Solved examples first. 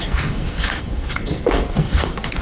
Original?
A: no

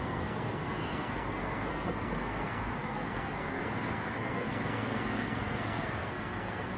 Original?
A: no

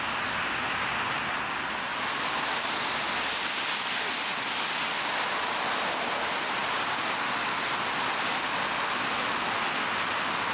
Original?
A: yes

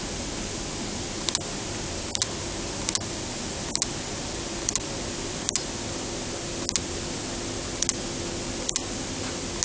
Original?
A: yes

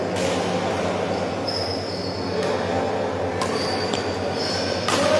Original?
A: yes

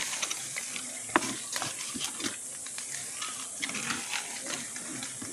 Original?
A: yes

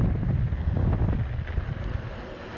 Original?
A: yes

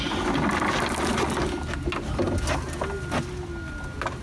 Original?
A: yes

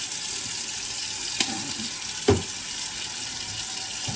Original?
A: yes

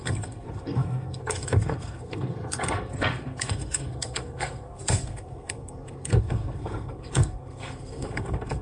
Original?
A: no